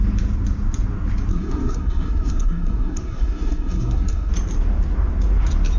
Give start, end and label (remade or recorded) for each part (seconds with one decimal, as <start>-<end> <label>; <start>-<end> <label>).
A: 0.0-1.3 recorded; 1.3-4.3 remade; 4.3-5.8 recorded

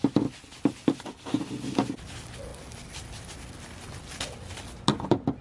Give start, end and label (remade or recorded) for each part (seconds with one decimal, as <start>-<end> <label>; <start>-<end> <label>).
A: 0.0-5.4 recorded